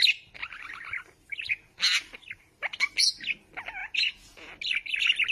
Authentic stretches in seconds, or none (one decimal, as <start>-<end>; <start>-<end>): 0.0-3.8; 4.5-5.3